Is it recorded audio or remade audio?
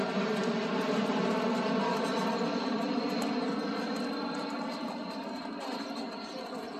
recorded